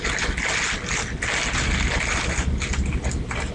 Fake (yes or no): no